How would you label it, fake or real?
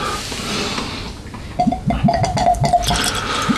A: real